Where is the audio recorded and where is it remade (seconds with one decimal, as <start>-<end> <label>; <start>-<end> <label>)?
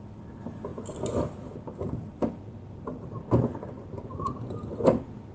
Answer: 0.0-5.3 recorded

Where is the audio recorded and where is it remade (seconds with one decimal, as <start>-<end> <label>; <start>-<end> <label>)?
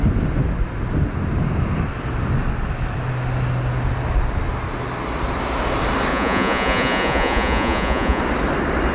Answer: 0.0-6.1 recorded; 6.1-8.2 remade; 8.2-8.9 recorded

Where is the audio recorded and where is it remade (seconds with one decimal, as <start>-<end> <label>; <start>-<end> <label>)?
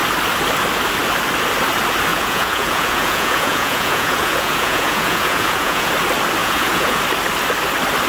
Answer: 0.0-2.1 recorded; 2.1-5.9 remade; 5.9-6.4 recorded; 6.4-7.0 remade; 7.0-8.1 recorded